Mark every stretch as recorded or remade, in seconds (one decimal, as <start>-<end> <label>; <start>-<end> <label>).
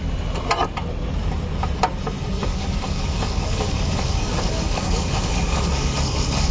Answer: 0.0-2.5 recorded; 2.5-6.5 remade